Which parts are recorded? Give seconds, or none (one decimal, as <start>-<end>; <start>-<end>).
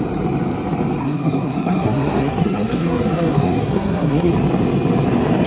0.0-1.0; 4.3-5.5